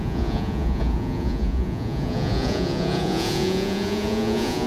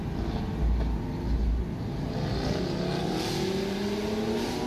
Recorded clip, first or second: second